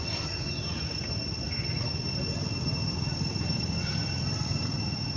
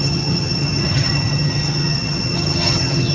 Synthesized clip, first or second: second